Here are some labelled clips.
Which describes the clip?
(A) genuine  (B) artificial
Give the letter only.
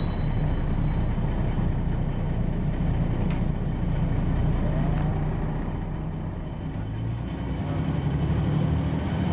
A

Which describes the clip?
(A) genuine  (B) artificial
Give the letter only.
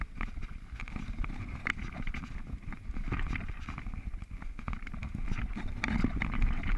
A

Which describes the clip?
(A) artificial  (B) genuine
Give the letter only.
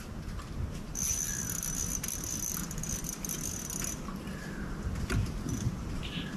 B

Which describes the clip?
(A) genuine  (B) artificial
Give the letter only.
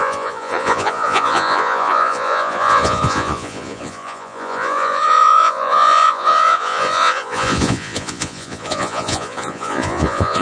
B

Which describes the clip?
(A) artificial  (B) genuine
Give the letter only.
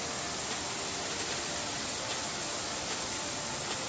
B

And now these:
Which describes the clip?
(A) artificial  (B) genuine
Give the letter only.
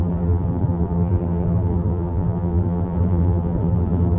A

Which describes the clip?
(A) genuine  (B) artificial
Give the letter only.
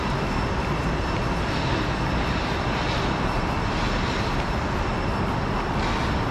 A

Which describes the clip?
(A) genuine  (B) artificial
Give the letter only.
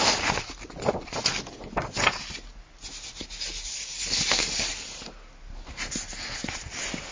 A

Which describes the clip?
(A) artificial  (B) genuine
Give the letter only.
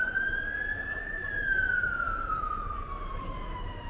B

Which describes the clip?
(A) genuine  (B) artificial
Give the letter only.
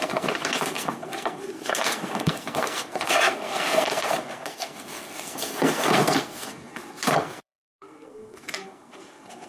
B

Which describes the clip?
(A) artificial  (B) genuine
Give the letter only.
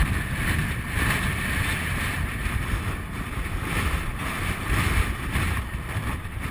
A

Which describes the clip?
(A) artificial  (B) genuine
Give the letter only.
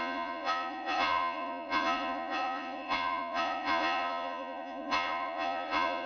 A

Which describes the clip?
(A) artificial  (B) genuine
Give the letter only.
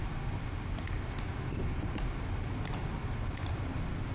B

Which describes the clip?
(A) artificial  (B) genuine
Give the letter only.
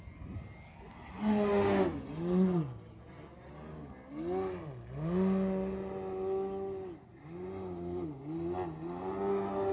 B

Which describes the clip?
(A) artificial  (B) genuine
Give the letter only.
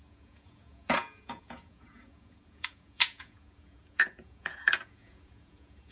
A